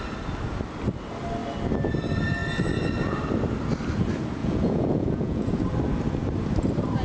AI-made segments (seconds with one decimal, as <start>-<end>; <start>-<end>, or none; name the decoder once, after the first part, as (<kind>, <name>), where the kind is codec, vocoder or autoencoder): 4.4-5.5 (vocoder, Vocos)